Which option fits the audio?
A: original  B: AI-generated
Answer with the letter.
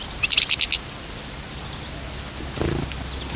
A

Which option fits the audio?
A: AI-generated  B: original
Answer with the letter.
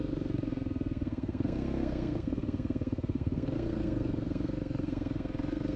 A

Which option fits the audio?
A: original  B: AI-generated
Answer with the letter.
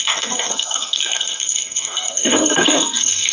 B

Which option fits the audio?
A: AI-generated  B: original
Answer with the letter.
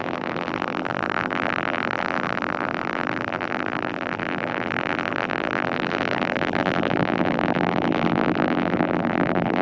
A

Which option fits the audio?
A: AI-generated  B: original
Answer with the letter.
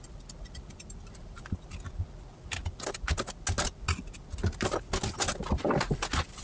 B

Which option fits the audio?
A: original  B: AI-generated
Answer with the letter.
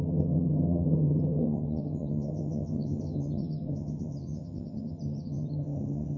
B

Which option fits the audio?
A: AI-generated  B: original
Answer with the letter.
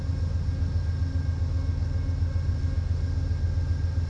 B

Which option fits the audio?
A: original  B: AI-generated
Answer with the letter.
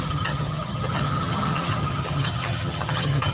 B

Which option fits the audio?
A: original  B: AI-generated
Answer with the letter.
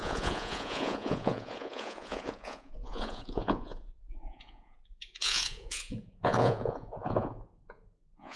B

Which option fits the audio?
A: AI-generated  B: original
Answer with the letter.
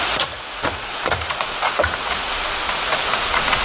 A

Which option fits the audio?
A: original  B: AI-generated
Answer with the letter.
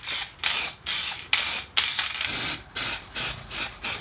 A